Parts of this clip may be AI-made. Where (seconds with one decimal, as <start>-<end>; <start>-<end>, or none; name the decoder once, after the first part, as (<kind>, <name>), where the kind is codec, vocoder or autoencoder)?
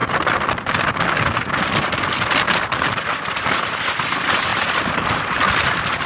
none